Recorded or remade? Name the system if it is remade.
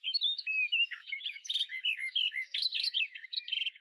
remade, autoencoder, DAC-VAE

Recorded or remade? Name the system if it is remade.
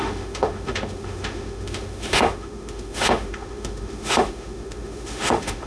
remade, autoencoder, DAC-VAE